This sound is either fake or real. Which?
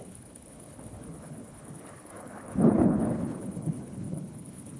fake